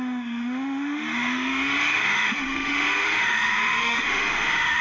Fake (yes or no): yes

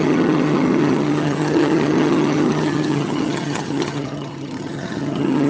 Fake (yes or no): yes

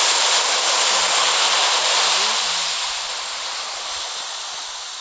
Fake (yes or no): no